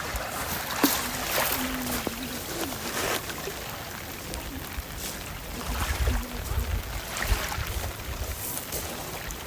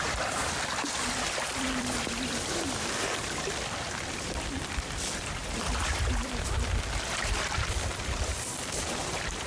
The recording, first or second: first